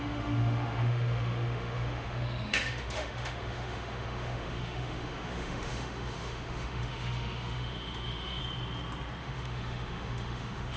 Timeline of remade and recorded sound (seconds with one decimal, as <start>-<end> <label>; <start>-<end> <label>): 0.0-8.4 remade; 8.4-9.2 recorded; 9.2-10.8 remade